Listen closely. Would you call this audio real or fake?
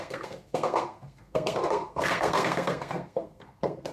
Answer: fake